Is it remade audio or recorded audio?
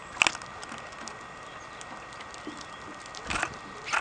recorded